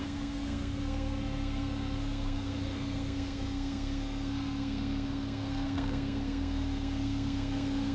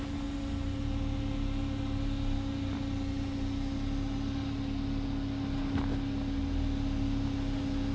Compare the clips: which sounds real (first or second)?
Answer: second